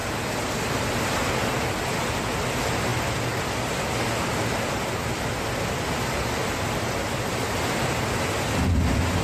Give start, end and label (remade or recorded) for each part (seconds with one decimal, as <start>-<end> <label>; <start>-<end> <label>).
0.0-9.2 recorded